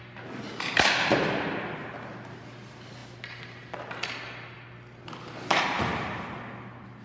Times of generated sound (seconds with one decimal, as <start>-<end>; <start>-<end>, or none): none